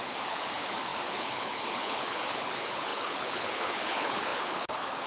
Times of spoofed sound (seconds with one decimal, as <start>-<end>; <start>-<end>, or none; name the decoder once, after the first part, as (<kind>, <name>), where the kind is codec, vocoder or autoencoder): 0.0-5.1 (codec, HILCodec)